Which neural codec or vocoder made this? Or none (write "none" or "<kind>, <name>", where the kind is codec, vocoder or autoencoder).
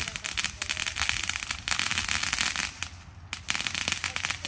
none